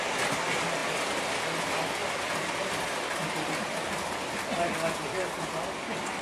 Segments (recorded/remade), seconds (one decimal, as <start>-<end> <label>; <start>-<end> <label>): 0.0-6.2 recorded